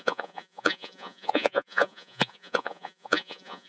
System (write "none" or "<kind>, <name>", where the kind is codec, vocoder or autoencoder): vocoder, Vocos